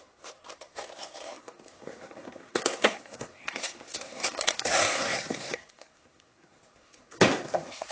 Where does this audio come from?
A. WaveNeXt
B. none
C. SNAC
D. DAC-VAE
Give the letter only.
C